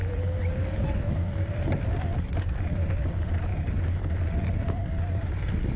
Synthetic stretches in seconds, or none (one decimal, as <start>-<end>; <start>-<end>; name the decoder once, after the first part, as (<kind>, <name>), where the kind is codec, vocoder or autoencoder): 4.8-5.8 (vocoder, BigVGAN v2)